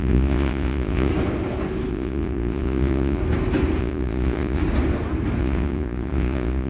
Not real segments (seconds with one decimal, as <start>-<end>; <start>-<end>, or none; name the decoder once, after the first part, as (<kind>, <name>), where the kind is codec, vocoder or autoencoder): 0.0-1.1 (vocoder, Vocos); 1.9-3.2; 3.8-4.6; 5.4-6.7